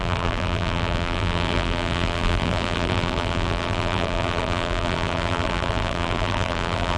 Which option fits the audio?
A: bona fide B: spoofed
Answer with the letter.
B